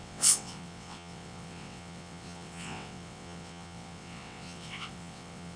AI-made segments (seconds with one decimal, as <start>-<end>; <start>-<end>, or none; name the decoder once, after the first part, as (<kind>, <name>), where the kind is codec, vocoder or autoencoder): 0.0-5.6 (vocoder, WaveNeXt)